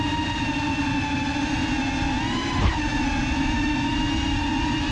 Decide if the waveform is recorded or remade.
recorded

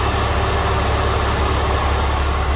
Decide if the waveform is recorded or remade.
recorded